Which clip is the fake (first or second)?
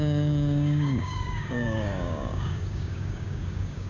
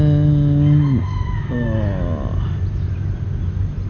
first